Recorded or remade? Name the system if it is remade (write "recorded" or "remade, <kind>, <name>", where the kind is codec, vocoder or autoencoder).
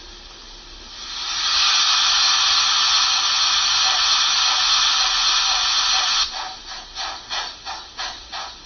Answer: recorded